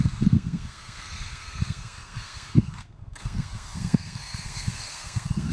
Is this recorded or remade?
remade